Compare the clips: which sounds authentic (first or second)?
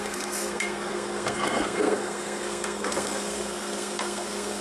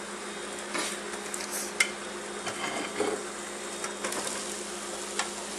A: second